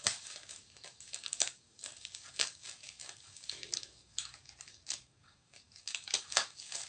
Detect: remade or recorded remade